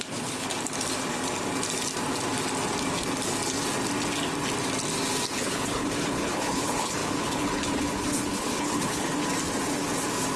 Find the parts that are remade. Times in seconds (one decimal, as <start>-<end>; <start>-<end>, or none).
0.0-0.5; 5.3-9.1